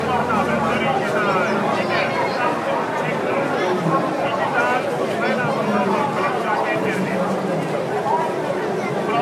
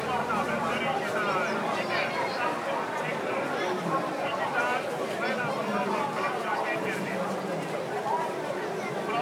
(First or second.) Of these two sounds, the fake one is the second